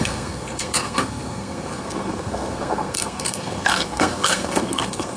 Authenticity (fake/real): fake